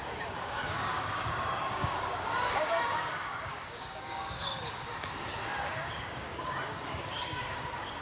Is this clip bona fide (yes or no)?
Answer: no